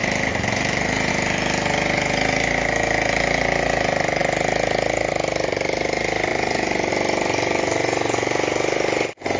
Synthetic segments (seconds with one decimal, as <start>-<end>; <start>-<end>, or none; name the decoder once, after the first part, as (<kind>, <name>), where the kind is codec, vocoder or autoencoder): 0.0-1.1 (vocoder, BigVGAN v2); 6.3-6.9

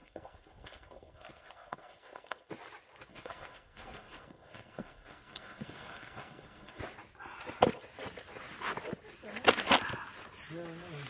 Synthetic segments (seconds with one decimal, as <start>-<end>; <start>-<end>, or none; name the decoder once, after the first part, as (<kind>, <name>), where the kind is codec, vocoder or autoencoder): 0.0-2.5 (codec, SNAC); 3.1-6.8

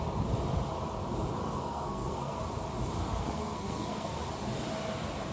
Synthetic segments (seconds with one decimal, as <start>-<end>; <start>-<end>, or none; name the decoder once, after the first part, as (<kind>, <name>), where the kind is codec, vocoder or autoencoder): 1.4-2.4 (codec, SNAC); 3.0-4.2

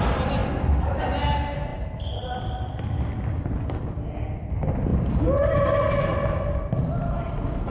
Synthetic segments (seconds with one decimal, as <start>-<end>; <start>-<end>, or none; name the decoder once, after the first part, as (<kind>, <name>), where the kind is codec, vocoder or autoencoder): none

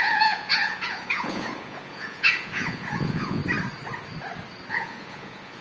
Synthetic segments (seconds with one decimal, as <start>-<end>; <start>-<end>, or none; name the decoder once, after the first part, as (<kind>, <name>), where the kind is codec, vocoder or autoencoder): 0.0-3.4 (vocoder, Vocos); 4.7-5.6

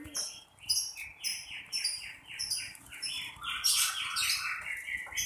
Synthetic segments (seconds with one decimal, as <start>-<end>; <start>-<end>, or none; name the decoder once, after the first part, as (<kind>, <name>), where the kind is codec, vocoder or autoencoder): 1.3-3.9 (vocoder, BigVGAN v2)